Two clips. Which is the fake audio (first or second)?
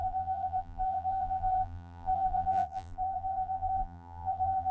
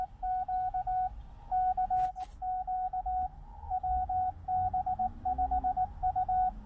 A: first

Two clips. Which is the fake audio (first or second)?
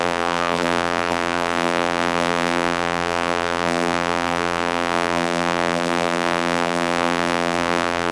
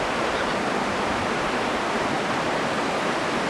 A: first